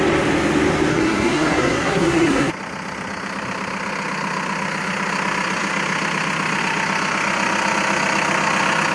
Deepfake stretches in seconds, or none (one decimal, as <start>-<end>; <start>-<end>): 0.9-2.5